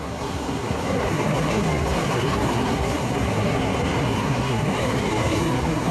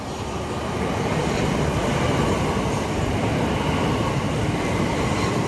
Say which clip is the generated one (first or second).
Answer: first